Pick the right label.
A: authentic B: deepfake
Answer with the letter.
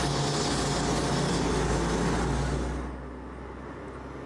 A